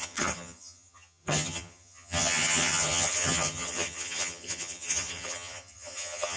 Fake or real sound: fake